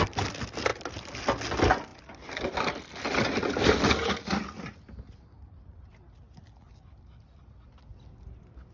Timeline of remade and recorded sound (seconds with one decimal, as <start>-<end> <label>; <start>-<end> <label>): 0.0-8.7 recorded